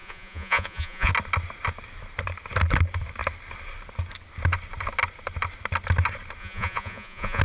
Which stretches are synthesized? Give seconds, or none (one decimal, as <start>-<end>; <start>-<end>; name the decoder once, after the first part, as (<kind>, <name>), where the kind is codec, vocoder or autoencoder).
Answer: 0.0-1.1 (vocoder, Vocos); 6.4-7.4